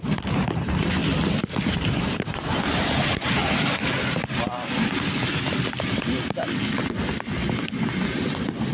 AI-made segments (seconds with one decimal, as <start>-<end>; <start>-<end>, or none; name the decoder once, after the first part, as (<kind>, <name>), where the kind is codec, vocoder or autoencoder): 0.0-1.0 (vocoder, BigVGAN v2); 1.7-3.4; 8.1-8.7